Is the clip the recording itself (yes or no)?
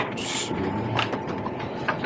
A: yes